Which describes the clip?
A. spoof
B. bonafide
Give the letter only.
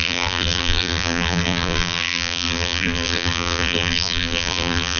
A